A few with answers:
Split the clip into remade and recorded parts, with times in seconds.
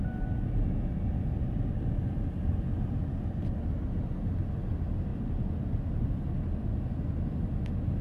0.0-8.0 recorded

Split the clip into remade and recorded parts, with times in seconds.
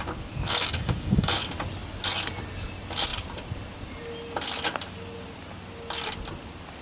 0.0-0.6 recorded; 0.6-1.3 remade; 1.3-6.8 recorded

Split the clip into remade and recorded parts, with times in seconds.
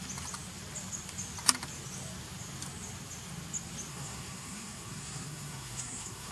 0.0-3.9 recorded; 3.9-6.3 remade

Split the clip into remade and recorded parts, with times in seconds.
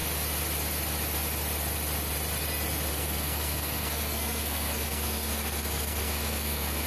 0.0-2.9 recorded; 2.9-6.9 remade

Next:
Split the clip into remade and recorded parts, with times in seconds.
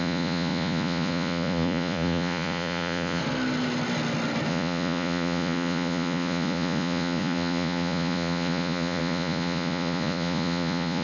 0.0-3.2 remade; 3.2-4.5 recorded; 4.5-11.0 remade